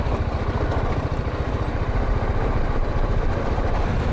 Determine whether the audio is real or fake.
real